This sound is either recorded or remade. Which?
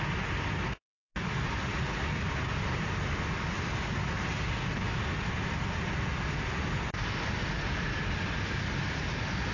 recorded